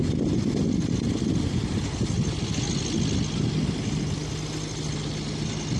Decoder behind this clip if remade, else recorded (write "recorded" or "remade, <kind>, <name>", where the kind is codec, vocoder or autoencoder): recorded